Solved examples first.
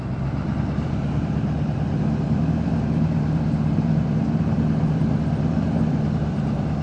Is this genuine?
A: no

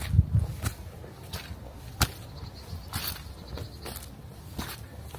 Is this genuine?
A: yes